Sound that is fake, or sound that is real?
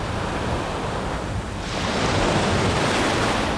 real